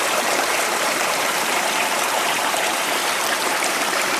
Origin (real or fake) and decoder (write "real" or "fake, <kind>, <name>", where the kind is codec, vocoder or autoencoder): fake, vocoder, BigVGAN v2